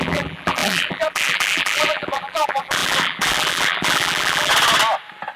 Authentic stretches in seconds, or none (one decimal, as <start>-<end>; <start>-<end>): 4.5-5.4